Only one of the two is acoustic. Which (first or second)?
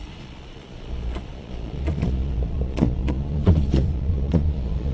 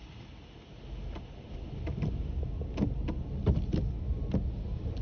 second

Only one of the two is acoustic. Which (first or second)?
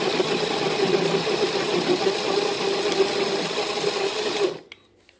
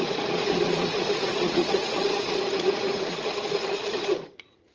first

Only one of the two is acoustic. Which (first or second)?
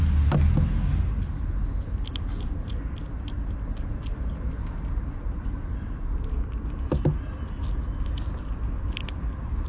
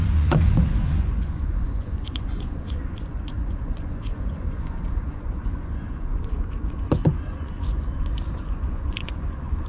first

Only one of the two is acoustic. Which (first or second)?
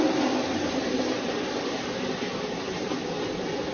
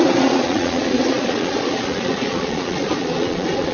first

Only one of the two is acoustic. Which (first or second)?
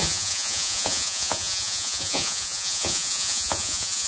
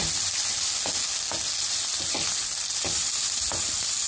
second